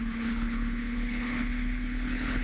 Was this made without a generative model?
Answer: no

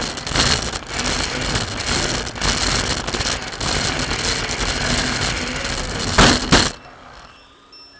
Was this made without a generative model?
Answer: yes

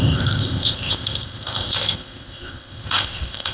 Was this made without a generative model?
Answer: no